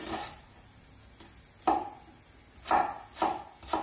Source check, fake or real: real